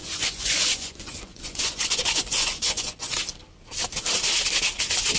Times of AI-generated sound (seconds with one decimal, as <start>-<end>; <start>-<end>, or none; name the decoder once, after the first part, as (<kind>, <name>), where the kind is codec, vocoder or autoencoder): 0.0-3.1 (vocoder, Vocos)